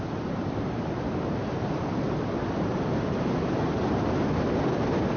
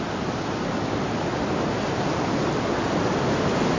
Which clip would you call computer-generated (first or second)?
first